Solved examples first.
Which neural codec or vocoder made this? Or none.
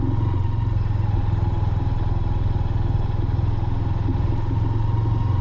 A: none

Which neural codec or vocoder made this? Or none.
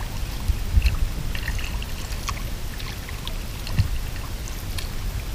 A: none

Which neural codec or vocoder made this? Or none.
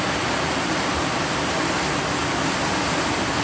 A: none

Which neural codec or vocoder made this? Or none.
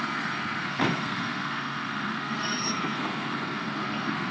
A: codec, SNAC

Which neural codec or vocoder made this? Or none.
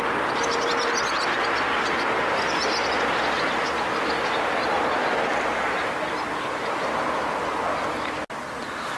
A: none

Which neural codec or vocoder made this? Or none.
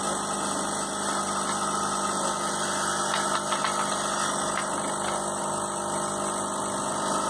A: none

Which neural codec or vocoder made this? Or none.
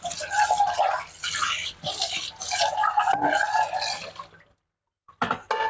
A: none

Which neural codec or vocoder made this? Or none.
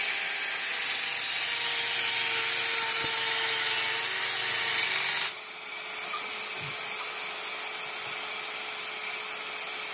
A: none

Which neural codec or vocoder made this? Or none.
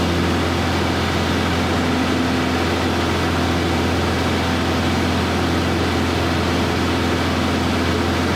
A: none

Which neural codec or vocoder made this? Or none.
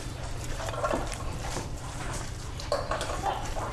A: vocoder, BigVGAN v2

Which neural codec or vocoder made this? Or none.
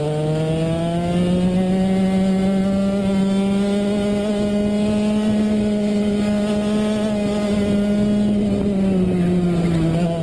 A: none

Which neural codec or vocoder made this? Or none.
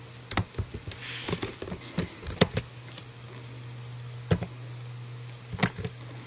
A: none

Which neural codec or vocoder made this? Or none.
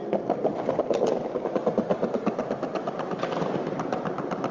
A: none